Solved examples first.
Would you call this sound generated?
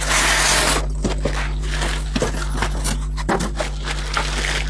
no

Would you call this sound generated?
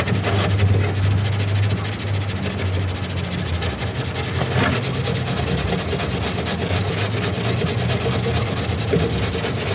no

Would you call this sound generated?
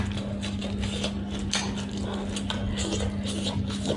no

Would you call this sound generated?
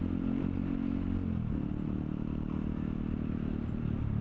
no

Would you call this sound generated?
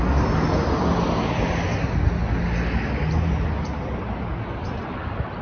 no